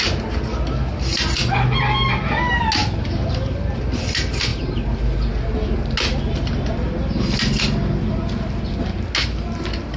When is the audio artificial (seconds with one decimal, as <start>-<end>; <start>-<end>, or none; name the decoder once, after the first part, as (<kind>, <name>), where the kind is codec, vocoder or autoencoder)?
none